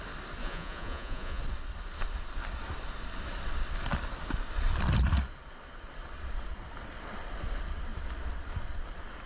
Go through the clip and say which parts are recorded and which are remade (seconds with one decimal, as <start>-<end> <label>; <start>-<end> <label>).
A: 0.0-0.4 recorded; 0.4-1.4 remade; 1.4-9.3 recorded